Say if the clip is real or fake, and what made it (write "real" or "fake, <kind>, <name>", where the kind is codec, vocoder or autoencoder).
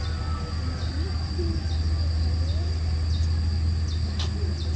real